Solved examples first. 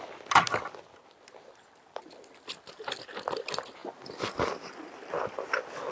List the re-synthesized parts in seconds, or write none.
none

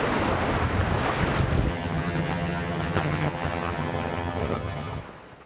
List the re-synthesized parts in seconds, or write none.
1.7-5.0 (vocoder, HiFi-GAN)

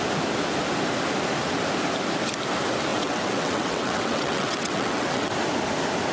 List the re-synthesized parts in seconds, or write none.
2.9-5.3 (vocoder, WaveNeXt)

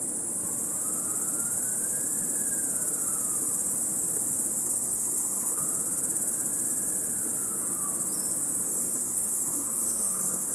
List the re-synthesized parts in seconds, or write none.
4.6-5.6 (codec, SNAC); 8.7-10.5

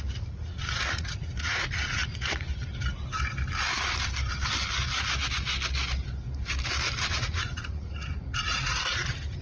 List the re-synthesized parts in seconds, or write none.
0.0-2.5 (vocoder, Vocos); 7.1-9.4

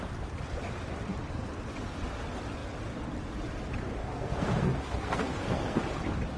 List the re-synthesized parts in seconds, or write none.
4.0-5.8 (codec, SNAC)

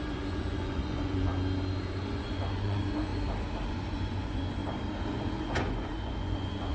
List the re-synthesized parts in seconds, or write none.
0.0-1.3 (vocoder, Vocos); 2.1-3.1; 3.7-4.6; 5.1-6.7